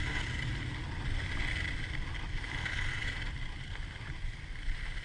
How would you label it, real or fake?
real